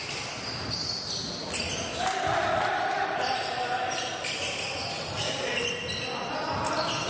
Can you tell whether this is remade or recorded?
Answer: recorded